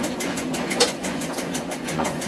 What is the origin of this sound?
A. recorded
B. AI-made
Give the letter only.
B